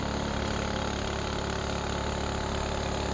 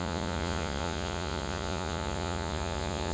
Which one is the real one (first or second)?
first